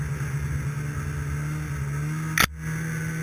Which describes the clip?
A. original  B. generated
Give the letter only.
A